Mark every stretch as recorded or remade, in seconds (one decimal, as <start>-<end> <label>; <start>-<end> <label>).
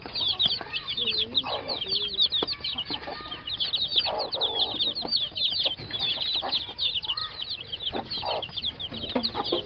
0.0-9.7 recorded